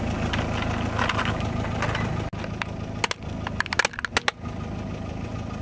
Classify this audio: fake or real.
real